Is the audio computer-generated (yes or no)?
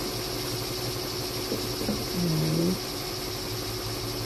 no